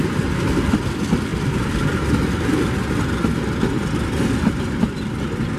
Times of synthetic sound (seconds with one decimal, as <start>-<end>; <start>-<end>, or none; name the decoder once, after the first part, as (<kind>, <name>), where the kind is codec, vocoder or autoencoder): none